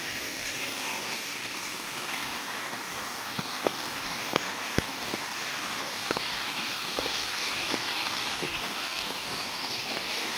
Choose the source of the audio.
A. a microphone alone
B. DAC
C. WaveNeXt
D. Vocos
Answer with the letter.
B